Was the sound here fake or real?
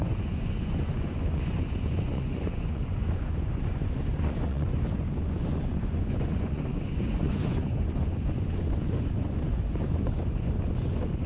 fake